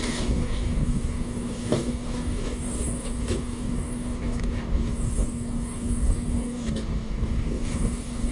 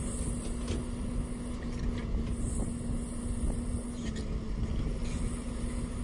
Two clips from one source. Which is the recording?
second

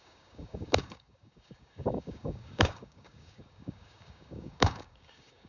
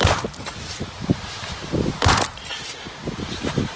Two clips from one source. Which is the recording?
second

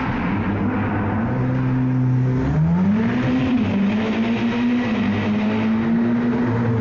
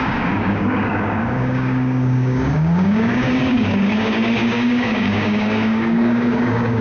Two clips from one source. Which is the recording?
first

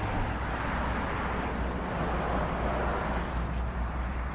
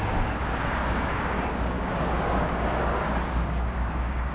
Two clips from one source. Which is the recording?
first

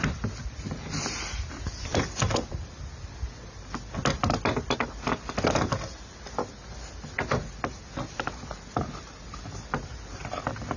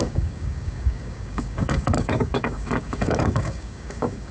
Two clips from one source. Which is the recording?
first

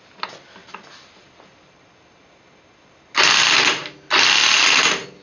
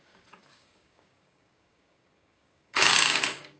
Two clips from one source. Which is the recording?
first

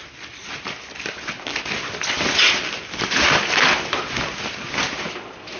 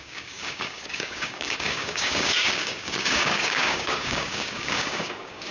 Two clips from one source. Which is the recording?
first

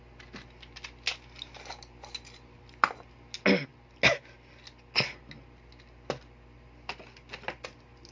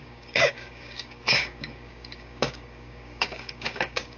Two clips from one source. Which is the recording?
first